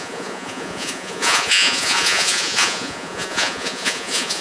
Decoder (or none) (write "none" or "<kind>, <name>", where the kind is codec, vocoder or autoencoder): vocoder, Vocos